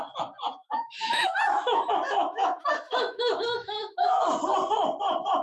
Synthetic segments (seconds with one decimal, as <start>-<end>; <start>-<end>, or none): 0.6-1.8; 2.2-4.2